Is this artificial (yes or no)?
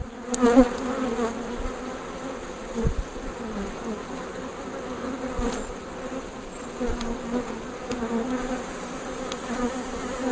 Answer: no